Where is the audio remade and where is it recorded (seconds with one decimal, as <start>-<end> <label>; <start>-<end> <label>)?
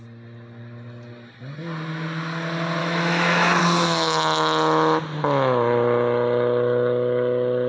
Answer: 0.0-2.8 recorded; 2.8-3.6 remade; 3.6-7.7 recorded